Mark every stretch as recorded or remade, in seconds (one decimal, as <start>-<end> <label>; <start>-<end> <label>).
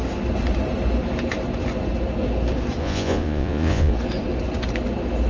0.0-2.8 recorded; 2.8-3.9 remade; 3.9-5.3 recorded